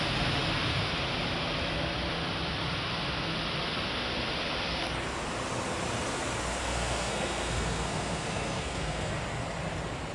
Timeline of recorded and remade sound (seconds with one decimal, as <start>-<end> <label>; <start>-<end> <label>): 0.0-6.6 recorded; 6.6-9.1 remade; 9.1-10.1 recorded